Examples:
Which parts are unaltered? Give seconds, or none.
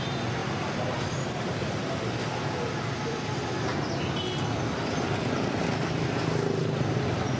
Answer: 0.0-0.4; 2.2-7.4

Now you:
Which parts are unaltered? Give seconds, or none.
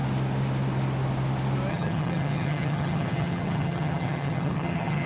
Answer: 0.0-1.7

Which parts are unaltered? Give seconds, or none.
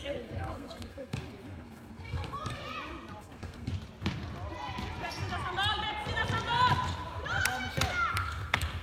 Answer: 2.6-3.2; 3.7-8.1